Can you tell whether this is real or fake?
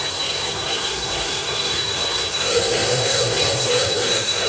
fake